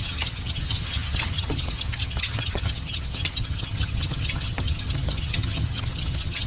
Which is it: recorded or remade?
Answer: remade